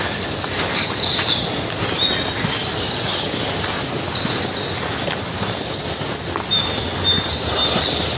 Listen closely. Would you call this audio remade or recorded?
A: recorded